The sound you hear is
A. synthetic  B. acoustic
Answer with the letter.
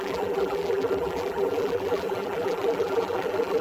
A